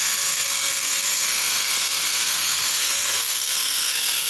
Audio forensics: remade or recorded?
remade